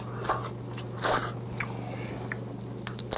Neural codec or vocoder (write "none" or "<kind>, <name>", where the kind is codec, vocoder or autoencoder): none